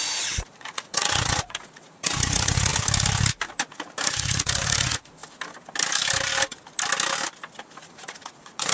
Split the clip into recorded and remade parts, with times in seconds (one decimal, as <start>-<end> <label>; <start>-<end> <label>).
0.0-2.7 remade; 2.7-4.0 recorded; 4.0-5.2 remade; 5.2-7.8 recorded; 7.8-8.7 remade